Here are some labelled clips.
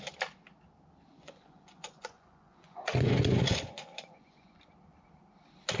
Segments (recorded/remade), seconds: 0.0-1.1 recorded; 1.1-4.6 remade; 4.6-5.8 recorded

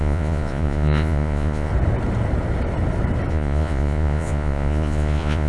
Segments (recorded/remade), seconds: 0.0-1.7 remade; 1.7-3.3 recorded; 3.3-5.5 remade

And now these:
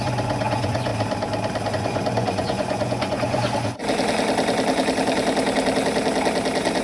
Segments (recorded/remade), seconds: 0.0-0.9 remade; 0.9-1.7 recorded; 1.7-3.8 remade; 3.8-6.8 recorded

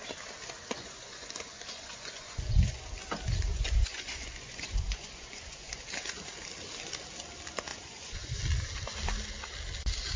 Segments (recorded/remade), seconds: 0.0-0.6 recorded; 0.6-2.9 remade; 2.9-3.5 recorded; 3.5-5.8 remade; 5.8-7.7 recorded; 7.7-8.4 remade; 8.4-10.2 recorded